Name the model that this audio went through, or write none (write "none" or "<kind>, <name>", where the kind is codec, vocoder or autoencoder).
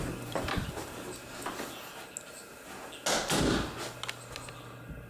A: none